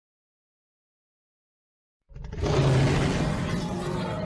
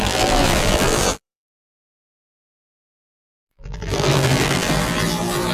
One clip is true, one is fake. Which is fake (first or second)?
second